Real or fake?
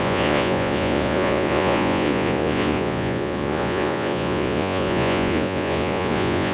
fake